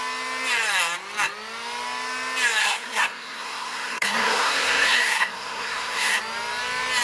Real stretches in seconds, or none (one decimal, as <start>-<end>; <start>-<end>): 0.0-2.6; 6.2-7.0

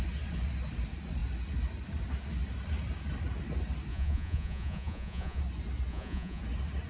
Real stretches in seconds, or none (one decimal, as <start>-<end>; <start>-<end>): 0.0-3.9; 5.4-5.9; 6.4-6.9

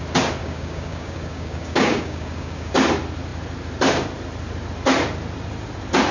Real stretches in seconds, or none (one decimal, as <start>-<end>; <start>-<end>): 0.0-0.4; 2.7-6.1

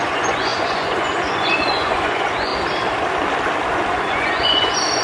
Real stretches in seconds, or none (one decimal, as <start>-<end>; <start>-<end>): 2.5-3.9

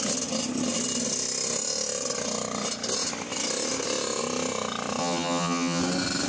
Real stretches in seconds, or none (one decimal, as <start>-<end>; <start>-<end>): 0.0-5.0; 5.8-6.3

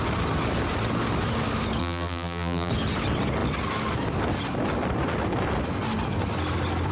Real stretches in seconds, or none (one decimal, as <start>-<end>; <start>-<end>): 0.0-1.8; 2.7-6.9

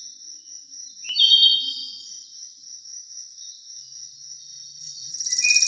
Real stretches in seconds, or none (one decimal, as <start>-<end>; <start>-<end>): 0.0-4.4; 5.1-5.7